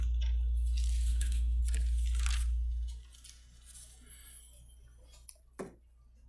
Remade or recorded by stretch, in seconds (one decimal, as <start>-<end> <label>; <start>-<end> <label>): 0.0-1.1 recorded; 1.1-1.6 remade; 1.6-6.3 recorded

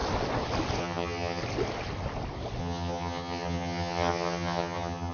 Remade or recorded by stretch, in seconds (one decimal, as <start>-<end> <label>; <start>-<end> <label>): 0.0-0.8 recorded; 0.8-1.4 remade; 1.4-2.6 recorded; 2.6-5.1 remade

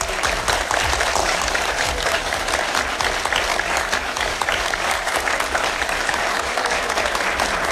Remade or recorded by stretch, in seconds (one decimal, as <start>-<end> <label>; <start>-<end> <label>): 0.0-1.2 recorded; 1.2-2.5 remade; 2.5-3.5 recorded; 3.5-6.9 remade; 6.9-7.7 recorded

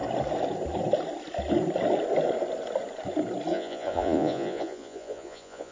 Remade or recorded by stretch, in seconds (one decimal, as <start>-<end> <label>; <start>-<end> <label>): 0.0-3.5 recorded; 3.5-5.7 remade

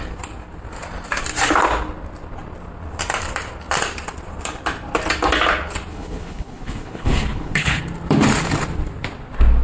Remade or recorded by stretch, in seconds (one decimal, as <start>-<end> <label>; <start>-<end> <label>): 0.0-5.9 recorded; 5.9-7.8 remade; 7.8-9.6 recorded

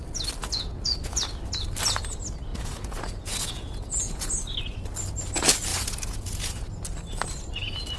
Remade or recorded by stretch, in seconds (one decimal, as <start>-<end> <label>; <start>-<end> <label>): 0.0-0.4 recorded; 0.4-1.2 remade; 1.2-2.5 recorded; 2.5-4.3 remade; 4.3-5.7 recorded; 5.7-6.7 remade; 6.7-8.0 recorded

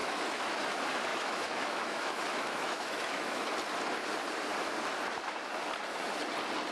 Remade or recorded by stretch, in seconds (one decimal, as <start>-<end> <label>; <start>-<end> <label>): 0.0-0.6 remade; 0.6-1.1 recorded; 1.1-3.5 remade; 3.5-6.7 recorded

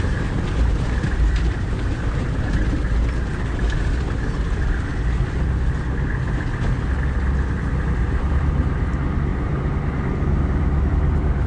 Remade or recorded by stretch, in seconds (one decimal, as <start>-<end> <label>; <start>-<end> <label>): 0.0-2.8 remade; 2.8-8.0 recorded; 8.0-11.5 remade